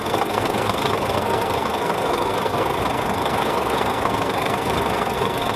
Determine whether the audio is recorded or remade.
remade